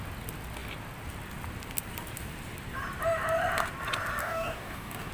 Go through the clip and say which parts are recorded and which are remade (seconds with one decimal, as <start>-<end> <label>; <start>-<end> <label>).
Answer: 0.0-4.2 recorded; 4.2-5.1 remade

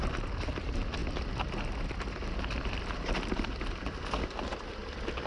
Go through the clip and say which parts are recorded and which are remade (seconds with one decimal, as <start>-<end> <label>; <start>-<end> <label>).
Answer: 0.0-5.3 recorded

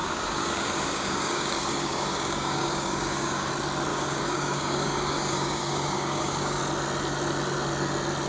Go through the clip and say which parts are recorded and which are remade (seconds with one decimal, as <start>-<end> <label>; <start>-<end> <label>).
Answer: 0.0-3.5 remade; 3.5-3.9 recorded; 3.9-6.6 remade; 6.6-8.3 recorded